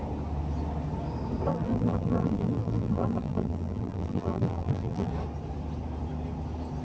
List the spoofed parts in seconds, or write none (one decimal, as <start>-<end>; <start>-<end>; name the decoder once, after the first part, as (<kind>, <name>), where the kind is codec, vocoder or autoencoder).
1.5-5.1 (vocoder, BigVGAN v2)